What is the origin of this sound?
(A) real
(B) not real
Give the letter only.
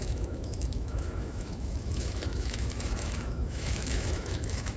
B